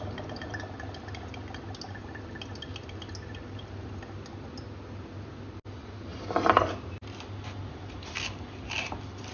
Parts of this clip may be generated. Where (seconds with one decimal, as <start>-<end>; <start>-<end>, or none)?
6.1-7.0